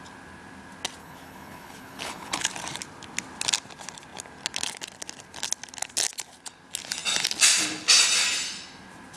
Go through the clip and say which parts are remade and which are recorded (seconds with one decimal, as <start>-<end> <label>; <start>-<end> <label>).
0.0-1.0 recorded; 1.0-2.5 remade; 2.5-9.2 recorded